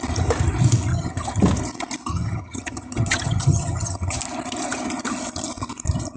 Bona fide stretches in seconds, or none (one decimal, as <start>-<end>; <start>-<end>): 0.0-0.9; 1.4-2.1; 4.2-6.2